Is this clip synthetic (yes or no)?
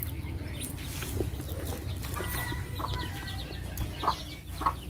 no